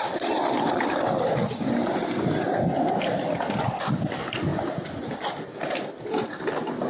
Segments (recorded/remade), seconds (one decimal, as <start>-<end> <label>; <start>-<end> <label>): 0.0-6.9 recorded